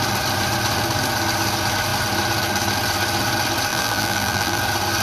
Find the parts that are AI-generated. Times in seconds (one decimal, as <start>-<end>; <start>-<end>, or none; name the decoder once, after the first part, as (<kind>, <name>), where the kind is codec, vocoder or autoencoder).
3.7-4.6 (vocoder, BigVGAN v2)